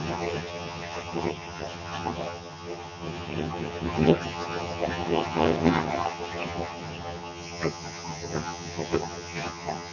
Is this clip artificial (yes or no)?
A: yes